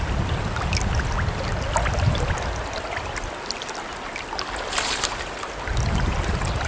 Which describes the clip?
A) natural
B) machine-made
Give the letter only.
A